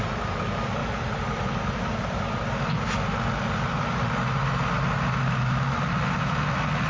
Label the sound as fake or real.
real